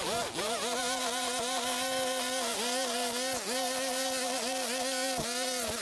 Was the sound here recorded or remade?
recorded